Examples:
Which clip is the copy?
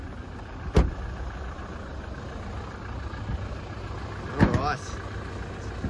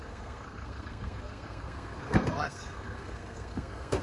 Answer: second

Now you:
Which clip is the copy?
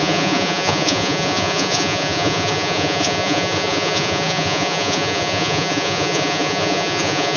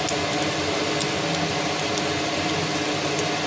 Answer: first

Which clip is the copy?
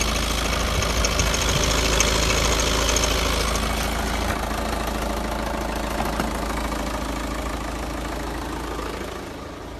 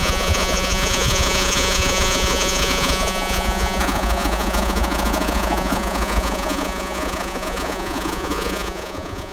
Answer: second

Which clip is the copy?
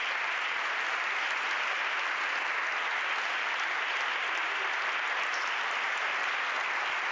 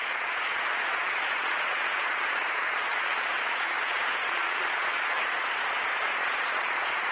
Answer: second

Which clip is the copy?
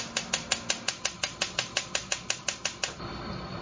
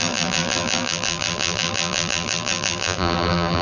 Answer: second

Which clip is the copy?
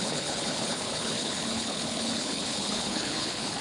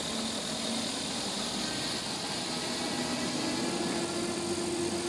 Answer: first